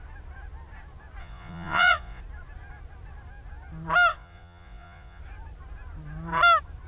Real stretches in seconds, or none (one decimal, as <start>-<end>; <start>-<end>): 0.0-1.2; 2.2-4.1; 5.2-6.9